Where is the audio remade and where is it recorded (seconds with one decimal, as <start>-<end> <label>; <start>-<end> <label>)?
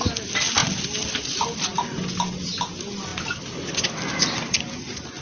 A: 0.0-3.1 recorded; 3.1-3.7 remade; 3.7-5.2 recorded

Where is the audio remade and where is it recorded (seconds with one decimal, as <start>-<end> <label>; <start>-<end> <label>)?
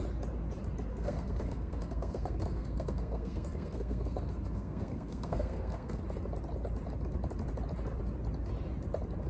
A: 0.0-0.9 recorded; 0.9-6.0 remade; 6.0-9.3 recorded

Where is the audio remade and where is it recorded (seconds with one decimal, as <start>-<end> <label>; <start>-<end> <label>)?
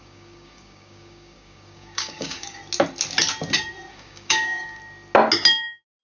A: 0.0-2.6 remade; 2.6-3.9 recorded; 3.9-4.8 remade; 4.8-6.0 recorded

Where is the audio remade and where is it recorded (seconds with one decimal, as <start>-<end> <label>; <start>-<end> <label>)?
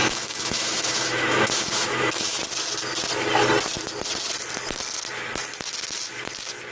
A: 0.0-2.4 remade; 2.4-6.7 recorded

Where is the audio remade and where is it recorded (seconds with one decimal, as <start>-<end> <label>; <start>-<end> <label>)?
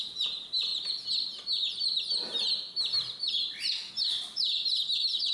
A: 0.0-5.3 recorded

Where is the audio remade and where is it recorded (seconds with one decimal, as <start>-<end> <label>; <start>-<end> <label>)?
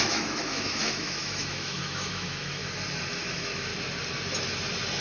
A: 0.0-2.6 remade; 2.6-3.1 recorded; 3.1-3.7 remade; 3.7-5.0 recorded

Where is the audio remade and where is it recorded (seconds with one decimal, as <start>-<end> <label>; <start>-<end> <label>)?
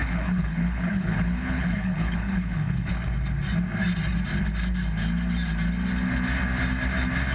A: 0.0-2.9 remade; 2.9-7.3 recorded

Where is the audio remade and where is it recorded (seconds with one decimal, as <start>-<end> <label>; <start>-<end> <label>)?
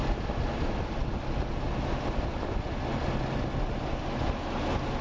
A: 0.0-5.0 recorded